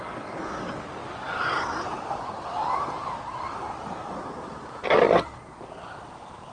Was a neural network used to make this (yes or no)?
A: no